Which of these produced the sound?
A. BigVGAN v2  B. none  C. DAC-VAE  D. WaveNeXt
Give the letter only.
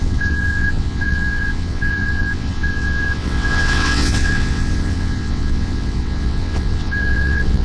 D